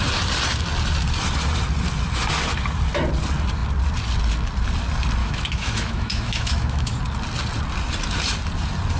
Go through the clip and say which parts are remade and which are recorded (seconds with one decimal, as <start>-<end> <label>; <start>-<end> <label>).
0.0-5.2 recorded; 5.2-7.0 remade; 7.0-9.0 recorded